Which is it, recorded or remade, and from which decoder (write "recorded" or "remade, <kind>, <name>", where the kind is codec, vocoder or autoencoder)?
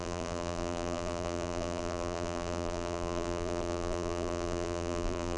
remade, vocoder, BigVGAN v2